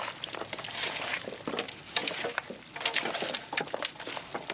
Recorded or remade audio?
recorded